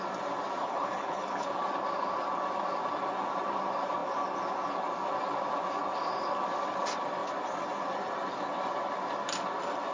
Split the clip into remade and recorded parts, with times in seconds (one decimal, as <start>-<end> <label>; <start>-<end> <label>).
0.0-0.6 recorded; 0.6-1.5 remade; 1.5-9.9 recorded